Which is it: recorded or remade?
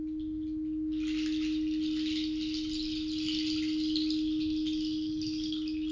recorded